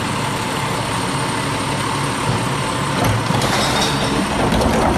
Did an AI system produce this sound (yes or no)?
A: no